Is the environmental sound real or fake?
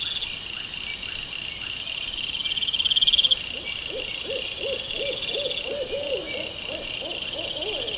real